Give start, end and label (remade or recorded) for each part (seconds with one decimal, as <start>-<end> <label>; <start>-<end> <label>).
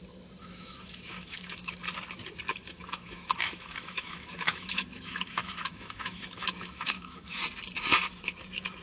0.0-0.4 recorded; 0.4-1.7 remade; 1.7-2.5 recorded; 2.5-7.4 remade; 7.4-8.8 recorded